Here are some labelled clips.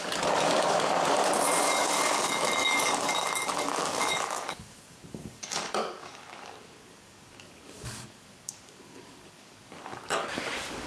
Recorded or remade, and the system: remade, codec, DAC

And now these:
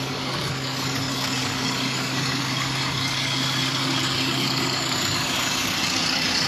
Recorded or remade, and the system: remade, codec, DAC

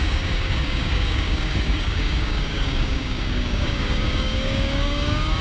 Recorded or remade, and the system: remade, codec, DAC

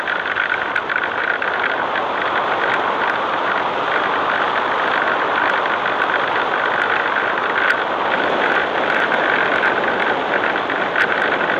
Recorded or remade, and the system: recorded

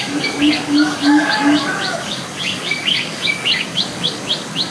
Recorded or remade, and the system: remade, codec, DAC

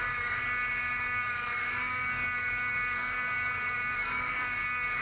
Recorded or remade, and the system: remade, codec, DAC